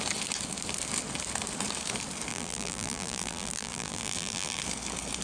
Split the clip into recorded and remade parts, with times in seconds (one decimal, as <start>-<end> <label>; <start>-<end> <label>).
0.0-2.3 recorded; 2.3-4.6 remade; 4.6-5.2 recorded